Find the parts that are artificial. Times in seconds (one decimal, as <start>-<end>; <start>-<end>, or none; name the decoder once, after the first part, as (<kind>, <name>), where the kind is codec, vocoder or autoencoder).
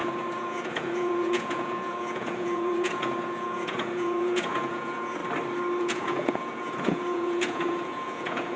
0.0-5.2 (vocoder, Vocos); 5.8-8.6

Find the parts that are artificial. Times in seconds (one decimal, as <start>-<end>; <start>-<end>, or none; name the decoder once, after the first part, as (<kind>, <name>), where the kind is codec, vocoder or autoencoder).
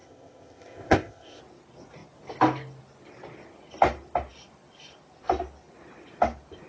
0.0-1.4 (codec, ZipCodec)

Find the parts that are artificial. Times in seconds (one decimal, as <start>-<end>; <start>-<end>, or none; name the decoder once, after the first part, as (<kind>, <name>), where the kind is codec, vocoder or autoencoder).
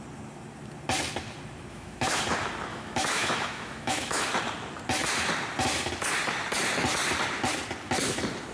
1.7-2.2 (autoencoder, DAC-VAE); 2.7-4.2